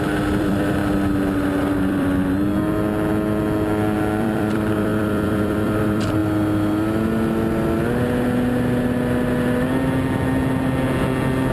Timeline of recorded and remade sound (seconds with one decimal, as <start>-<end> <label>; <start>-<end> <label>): 0.0-0.8 remade; 0.8-1.6 recorded; 1.6-2.5 remade; 2.5-4.0 recorded; 4.0-6.2 remade; 6.2-11.5 recorded